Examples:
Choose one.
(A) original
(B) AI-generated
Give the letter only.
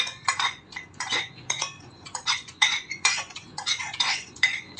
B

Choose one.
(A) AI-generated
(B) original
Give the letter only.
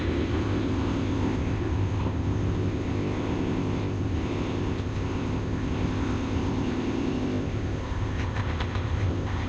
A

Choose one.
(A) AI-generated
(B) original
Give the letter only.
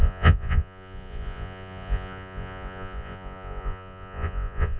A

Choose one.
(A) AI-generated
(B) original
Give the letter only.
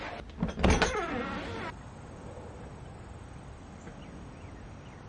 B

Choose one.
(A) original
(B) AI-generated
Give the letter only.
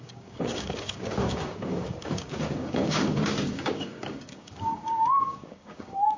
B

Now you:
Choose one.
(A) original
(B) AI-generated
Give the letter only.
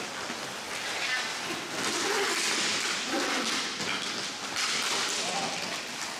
A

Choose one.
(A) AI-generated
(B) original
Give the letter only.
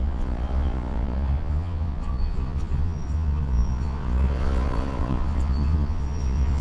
A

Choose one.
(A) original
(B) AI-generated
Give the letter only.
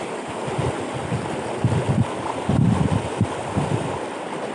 A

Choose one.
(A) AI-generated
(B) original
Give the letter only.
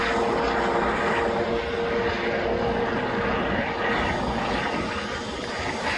B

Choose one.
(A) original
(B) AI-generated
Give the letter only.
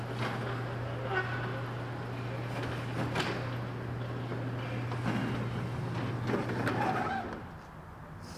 A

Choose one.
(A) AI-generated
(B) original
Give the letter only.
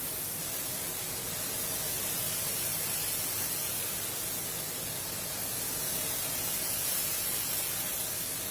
B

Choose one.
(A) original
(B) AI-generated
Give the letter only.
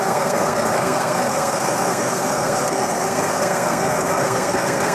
B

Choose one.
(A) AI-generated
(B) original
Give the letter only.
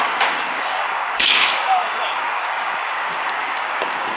A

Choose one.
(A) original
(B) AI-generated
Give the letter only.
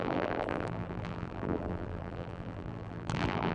B